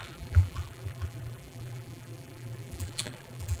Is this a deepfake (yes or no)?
yes